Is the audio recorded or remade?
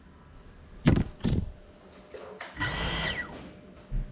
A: recorded